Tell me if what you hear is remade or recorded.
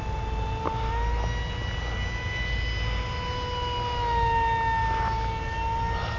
recorded